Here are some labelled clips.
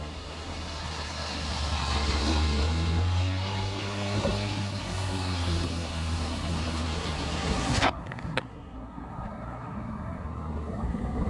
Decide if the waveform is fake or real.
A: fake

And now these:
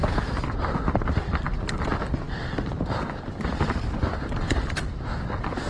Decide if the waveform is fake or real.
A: real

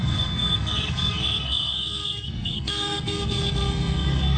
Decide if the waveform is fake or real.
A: fake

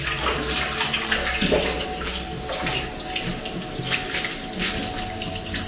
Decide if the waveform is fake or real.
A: real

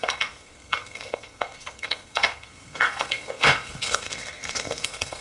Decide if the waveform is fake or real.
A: fake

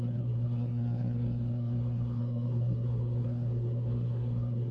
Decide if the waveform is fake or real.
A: fake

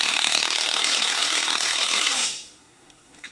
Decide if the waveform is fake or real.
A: fake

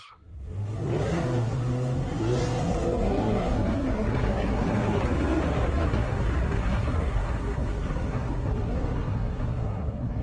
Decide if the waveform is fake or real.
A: fake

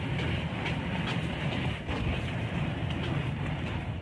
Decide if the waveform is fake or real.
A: real